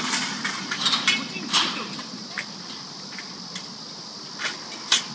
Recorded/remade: recorded